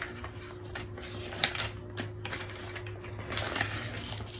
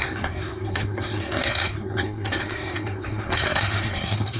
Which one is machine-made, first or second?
second